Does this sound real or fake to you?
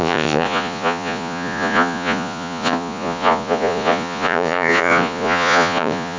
fake